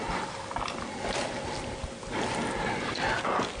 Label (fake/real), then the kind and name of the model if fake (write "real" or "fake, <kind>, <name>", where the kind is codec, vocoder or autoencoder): real